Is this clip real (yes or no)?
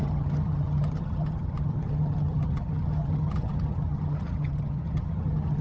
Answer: no